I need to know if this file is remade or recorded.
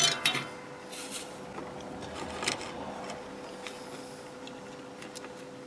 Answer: recorded